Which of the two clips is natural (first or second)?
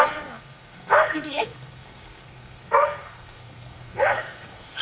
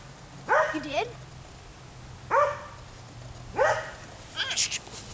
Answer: second